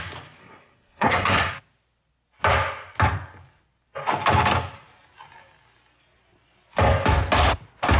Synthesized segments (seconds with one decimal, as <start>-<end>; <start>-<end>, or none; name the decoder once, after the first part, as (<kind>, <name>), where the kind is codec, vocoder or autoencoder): 0.4-1.5 (codec, SNAC)